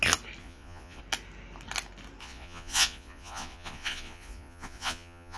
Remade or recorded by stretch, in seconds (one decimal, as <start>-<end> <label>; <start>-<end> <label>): 0.0-0.4 recorded; 0.4-1.0 remade; 1.0-2.2 recorded; 2.2-5.4 remade